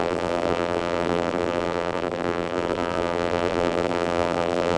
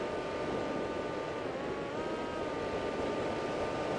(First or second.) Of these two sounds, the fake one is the first